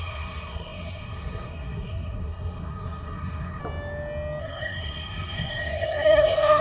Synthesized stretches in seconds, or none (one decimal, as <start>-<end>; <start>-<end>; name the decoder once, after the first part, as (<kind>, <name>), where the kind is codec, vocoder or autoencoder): 0.0-3.6 (codec, SNAC); 4.4-6.6